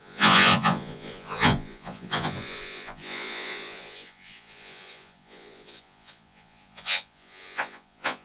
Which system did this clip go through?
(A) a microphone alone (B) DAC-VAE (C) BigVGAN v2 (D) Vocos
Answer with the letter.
D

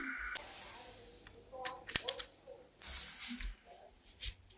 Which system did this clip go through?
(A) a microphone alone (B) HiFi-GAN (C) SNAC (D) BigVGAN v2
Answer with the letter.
A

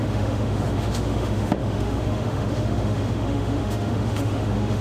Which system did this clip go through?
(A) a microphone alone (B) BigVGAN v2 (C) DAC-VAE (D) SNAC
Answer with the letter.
C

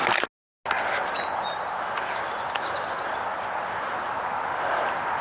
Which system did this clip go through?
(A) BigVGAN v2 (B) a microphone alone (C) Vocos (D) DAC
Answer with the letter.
B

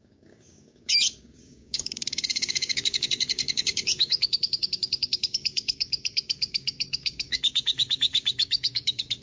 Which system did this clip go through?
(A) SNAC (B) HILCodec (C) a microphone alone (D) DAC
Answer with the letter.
D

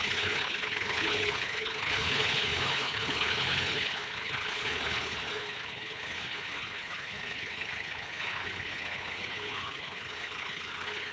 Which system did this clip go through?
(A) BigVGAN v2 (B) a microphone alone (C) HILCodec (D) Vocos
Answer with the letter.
C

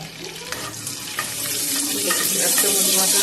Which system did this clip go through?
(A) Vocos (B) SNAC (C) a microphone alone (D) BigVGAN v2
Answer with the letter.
D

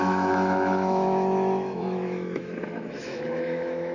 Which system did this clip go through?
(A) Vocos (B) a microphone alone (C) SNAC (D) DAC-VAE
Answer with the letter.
D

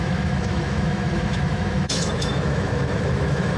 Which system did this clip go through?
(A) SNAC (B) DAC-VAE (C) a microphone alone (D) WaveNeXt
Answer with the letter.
B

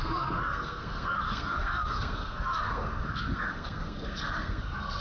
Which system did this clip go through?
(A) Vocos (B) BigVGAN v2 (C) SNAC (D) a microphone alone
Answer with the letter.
C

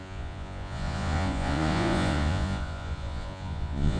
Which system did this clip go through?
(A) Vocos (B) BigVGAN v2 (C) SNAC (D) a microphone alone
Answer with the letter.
A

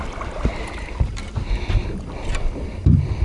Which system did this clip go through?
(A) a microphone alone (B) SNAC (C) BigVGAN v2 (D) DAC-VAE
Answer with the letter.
A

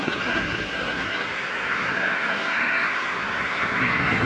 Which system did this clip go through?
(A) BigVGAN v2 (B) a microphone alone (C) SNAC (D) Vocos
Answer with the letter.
C